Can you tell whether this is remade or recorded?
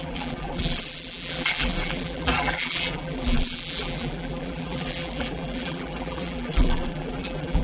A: remade